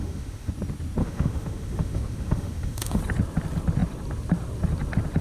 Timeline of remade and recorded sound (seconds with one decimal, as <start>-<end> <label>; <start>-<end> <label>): 0.0-0.5 remade; 0.5-1.0 recorded; 1.0-3.0 remade; 3.0-5.2 recorded